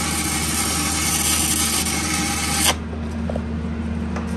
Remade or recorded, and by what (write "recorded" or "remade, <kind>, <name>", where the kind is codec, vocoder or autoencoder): recorded